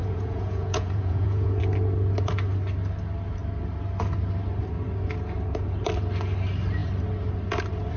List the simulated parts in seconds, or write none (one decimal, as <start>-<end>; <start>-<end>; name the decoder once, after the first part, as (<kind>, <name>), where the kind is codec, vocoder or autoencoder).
0.0-1.6 (vocoder, Vocos)